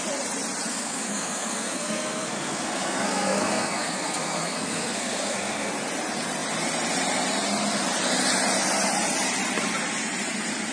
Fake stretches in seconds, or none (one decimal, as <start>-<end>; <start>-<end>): 0.7-5.7